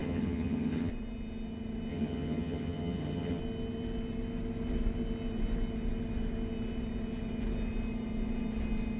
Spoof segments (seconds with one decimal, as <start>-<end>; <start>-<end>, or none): 0.0-0.9; 1.9-3.4